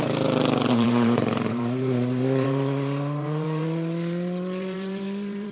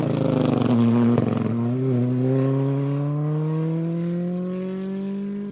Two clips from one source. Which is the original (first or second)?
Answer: second